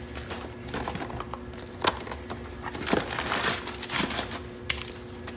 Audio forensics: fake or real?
real